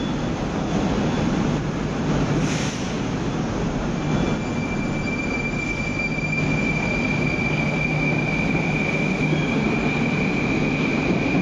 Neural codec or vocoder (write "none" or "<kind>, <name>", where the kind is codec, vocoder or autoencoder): none